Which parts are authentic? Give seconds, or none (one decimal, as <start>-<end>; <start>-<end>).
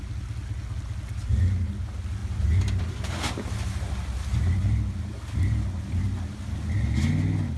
0.0-7.6